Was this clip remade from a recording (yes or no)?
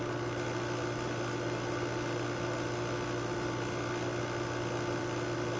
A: no